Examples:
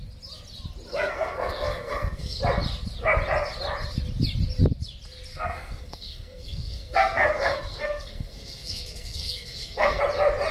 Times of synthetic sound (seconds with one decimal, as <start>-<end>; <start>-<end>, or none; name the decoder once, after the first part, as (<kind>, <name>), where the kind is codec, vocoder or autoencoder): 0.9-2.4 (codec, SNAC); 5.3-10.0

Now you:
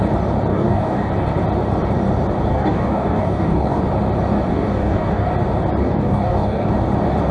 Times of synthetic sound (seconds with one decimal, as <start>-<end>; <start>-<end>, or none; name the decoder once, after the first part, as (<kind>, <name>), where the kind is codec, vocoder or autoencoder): 0.5-1.1 (codec, DAC); 2.5-3.8; 4.5-5.3; 5.8-6.7

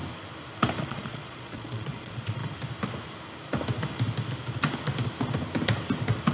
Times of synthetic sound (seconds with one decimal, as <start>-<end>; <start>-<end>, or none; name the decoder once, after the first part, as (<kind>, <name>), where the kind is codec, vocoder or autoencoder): 0.8-2.4 (vocoder, Vocos)

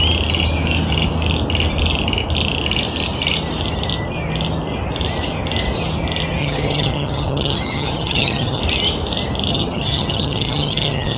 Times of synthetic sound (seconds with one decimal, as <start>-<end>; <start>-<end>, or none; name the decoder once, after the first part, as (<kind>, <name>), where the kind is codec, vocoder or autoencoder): 6.4-8.6 (vocoder, HiFi-GAN); 9.5-11.2

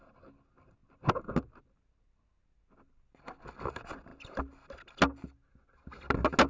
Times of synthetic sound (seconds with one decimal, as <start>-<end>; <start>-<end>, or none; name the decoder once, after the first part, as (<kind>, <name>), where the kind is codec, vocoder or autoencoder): none

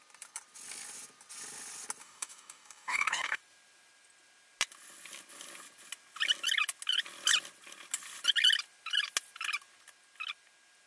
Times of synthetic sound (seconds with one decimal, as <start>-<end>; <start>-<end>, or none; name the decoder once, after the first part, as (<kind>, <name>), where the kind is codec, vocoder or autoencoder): 2.0-3.4 (codec, DAC)

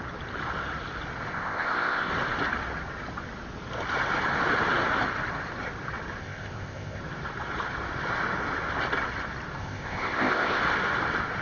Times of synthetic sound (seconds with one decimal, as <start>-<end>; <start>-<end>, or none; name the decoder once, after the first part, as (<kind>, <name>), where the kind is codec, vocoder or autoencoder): 1.3-2.1 (codec, ZipCodec); 6.2-7.0; 9.6-10.6